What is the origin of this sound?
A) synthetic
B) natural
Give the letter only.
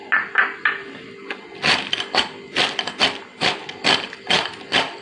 B